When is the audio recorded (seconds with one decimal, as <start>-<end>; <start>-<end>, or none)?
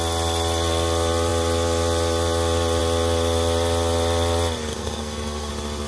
0.0-4.7; 5.5-5.9